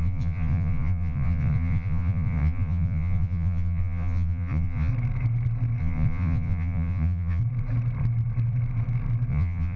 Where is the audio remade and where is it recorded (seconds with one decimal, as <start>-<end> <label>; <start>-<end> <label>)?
0.0-4.9 remade; 4.9-5.8 recorded; 5.8-7.4 remade; 7.4-9.3 recorded; 9.3-9.8 remade